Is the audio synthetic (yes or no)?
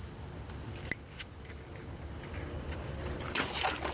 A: no